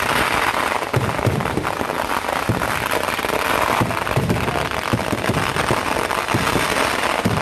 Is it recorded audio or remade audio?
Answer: remade